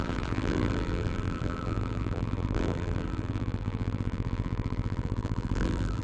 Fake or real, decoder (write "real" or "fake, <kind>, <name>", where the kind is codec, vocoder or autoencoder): fake, vocoder, BigVGAN v2